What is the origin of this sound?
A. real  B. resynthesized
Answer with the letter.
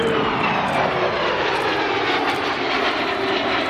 A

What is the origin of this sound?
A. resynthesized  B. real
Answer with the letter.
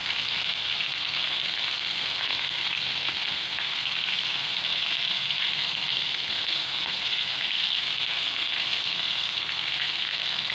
A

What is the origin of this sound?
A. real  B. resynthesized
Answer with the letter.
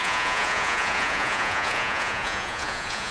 B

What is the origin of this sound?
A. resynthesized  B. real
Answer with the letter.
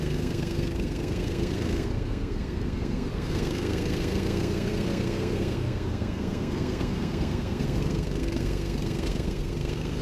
A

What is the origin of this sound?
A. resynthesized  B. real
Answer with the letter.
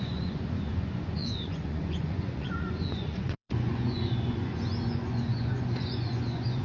A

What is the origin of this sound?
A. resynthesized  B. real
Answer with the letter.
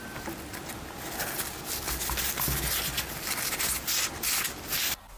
B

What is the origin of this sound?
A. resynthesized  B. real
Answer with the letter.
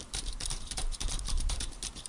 A